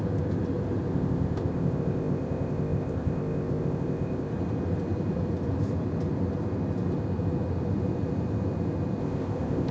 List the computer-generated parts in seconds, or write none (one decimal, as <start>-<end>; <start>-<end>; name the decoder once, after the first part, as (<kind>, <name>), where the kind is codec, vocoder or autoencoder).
0.9-4.3 (codec, ZipCodec); 9.0-9.7